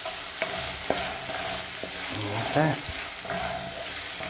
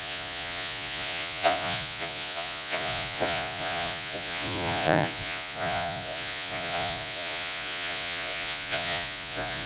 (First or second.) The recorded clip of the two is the first